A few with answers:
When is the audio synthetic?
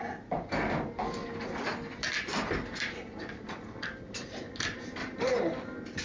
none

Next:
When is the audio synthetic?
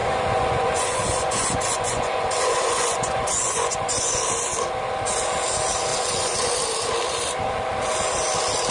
0.0-4.2 (vocoder, Vocos); 5.9-6.5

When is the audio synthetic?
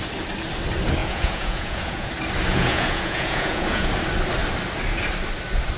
1.0-2.1 (vocoder, Vocos); 2.5-3.9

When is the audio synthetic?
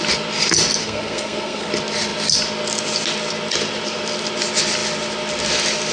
0.8-1.7 (codec, SNAC)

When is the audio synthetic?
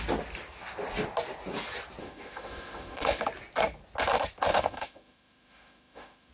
2.0-3.2 (autoencoder, DAC-VAE); 4.5-6.3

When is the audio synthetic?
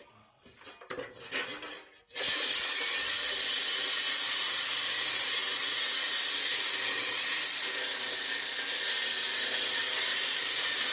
none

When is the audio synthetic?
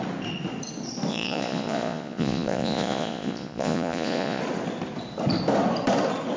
1.1-4.4 (vocoder, Vocos)